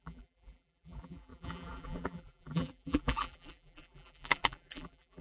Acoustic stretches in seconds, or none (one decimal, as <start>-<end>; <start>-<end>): none